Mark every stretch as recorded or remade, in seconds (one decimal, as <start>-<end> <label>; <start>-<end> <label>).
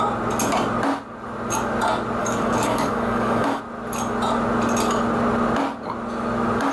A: 0.0-2.2 recorded; 2.2-3.6 remade; 3.6-6.7 recorded